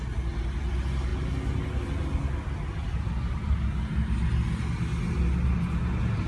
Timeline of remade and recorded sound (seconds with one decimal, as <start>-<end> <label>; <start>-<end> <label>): 0.0-6.3 recorded